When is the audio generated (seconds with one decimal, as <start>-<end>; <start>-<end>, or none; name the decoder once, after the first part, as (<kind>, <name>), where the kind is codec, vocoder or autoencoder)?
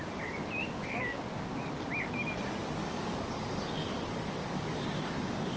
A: 0.6-1.2 (codec, DAC); 2.8-5.6